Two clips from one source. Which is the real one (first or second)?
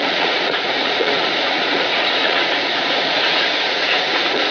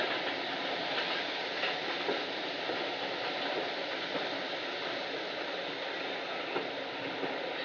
second